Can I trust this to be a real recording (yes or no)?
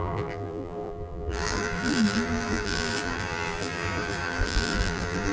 no